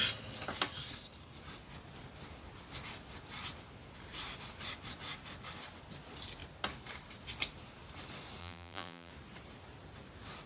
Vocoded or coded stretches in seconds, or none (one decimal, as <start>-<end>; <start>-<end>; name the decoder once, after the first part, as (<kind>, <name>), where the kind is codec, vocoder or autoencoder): 8.4-9.1 (vocoder, BigVGAN v2)